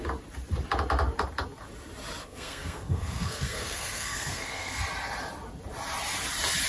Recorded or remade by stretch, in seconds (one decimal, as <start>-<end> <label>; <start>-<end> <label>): 0.0-2.2 recorded; 2.2-4.8 remade; 4.8-6.7 recorded